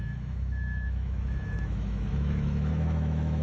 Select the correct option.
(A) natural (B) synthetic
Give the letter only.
B